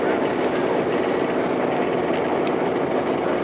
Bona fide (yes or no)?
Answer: yes